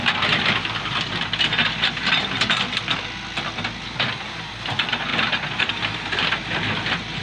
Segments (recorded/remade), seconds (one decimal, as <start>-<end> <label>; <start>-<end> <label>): 0.0-7.2 recorded